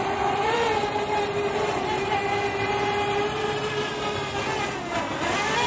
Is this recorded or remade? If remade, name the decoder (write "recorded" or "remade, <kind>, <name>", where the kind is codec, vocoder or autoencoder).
recorded